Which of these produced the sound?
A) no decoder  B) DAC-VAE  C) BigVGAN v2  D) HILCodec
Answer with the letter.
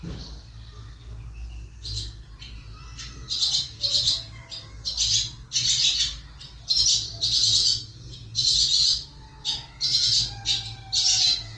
A